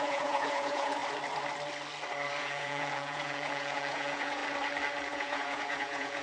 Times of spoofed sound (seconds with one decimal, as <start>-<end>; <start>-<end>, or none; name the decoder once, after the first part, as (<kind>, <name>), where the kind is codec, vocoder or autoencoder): 0.0-1.0 (vocoder, Vocos); 2.4-4.4; 5.1-6.2